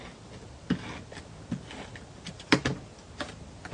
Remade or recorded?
recorded